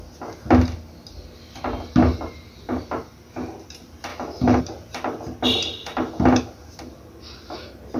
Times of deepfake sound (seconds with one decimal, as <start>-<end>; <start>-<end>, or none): 4.1-4.6

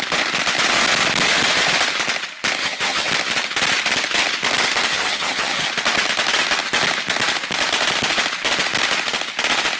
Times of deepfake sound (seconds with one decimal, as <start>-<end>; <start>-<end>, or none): 2.6-3.1; 4.9-5.7

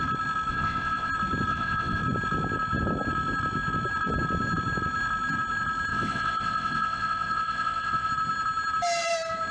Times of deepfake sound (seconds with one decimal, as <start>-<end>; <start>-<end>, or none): 0.5-1.1; 1.5-2.0; 5.9-8.1